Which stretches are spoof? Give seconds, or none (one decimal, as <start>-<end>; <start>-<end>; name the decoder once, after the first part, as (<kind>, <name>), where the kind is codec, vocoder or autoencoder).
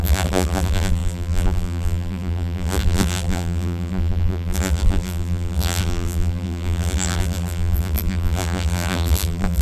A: 0.0-9.6 (vocoder, BigVGAN v2)